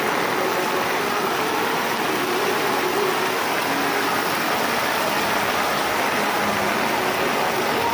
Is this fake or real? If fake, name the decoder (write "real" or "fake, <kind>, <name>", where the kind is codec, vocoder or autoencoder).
real